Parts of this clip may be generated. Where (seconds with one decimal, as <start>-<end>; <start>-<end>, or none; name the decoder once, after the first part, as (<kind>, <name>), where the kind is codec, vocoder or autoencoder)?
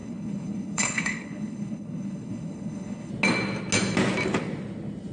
0.0-3.1 (codec, HILCodec)